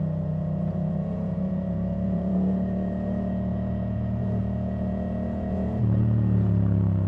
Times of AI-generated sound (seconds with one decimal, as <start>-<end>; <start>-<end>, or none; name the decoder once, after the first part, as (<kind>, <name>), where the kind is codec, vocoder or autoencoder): 0.0-7.1 (vocoder, Vocos)

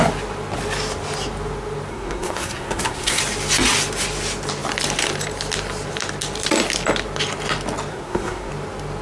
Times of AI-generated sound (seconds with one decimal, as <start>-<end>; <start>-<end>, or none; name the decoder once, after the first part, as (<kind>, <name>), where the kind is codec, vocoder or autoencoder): 1.9-3.2 (codec, SNAC); 7.9-8.5

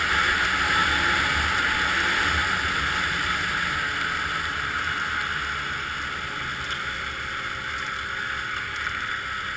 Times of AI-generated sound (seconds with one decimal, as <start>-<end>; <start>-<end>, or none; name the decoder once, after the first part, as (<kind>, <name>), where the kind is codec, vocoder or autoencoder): none

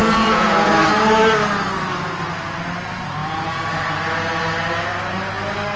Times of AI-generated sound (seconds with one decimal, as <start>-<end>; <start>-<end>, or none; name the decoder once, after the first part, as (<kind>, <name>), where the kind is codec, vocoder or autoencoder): 0.0-0.7 (vocoder, Vocos)

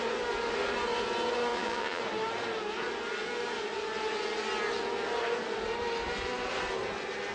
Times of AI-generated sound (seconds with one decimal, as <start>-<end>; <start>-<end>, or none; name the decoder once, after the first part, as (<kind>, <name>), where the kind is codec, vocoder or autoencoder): 1.5-2.0 (vocoder, Vocos)

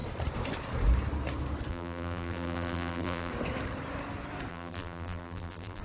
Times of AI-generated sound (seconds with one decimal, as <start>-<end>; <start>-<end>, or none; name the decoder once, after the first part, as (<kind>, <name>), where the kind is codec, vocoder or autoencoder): 1.7-3.3 (vocoder, BigVGAN v2); 4.5-5.8